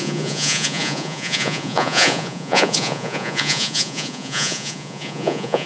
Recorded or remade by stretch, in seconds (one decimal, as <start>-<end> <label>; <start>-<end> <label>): 0.0-5.7 remade